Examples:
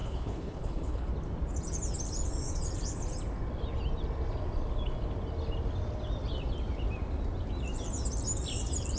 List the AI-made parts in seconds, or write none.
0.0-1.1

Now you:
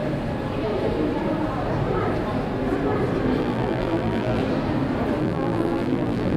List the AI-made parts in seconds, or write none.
3.4-4.4; 5.2-6.4

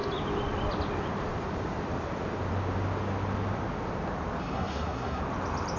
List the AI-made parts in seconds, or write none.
4.4-5.2

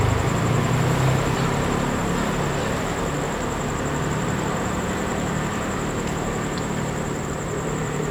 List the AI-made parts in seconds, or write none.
0.0-2.0; 4.0-8.1

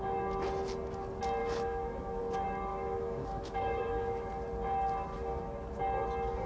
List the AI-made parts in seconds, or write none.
1.4-2.2; 2.7-4.3

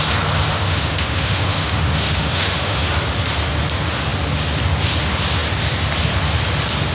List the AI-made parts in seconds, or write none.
0.5-2.9

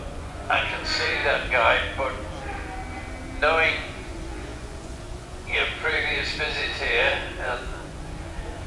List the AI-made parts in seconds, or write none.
0.0-1.2; 3.7-8.7

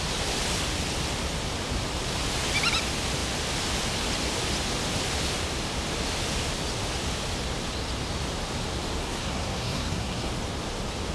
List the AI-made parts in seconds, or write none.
9.0-10.3